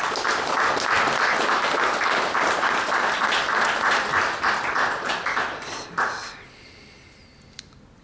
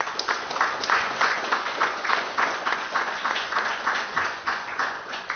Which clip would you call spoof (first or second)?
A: second